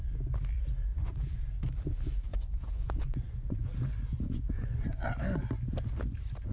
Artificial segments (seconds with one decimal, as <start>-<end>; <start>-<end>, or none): 0.9-1.5; 2.3-5.0